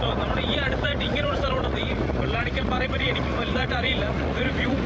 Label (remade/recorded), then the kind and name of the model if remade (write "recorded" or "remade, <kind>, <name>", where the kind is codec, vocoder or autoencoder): remade, vocoder, Vocos